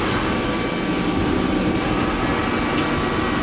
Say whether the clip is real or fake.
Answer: real